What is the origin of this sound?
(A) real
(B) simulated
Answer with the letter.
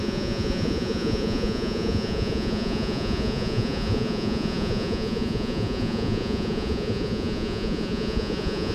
B